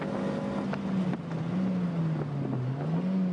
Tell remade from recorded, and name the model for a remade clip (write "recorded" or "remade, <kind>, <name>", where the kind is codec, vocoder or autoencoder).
recorded